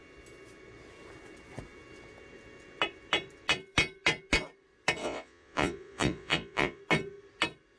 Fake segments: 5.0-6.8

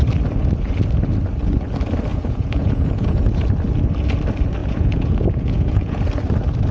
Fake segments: 2.1-3.4; 4.6-6.0

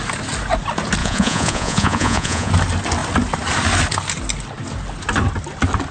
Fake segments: 1.0-2.5

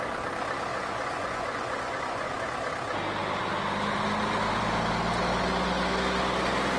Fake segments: 0.7-2.3

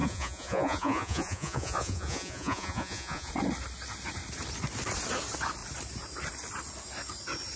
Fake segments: 0.0-3.3

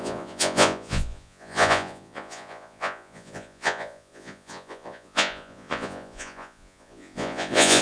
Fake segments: 0.0-7.8

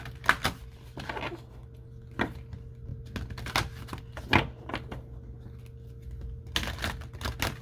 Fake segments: none